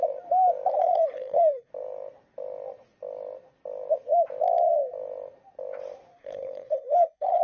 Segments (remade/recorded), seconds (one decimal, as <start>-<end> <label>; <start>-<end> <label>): 0.0-0.7 recorded; 0.7-1.7 remade; 1.7-6.1 recorded; 6.1-7.4 remade